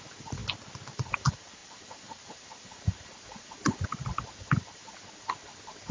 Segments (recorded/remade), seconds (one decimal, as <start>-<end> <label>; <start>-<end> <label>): 0.0-0.4 remade; 0.4-0.9 recorded; 0.9-5.9 remade